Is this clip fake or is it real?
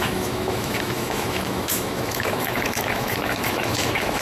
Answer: fake